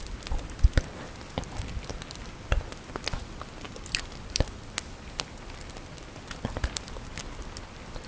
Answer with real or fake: real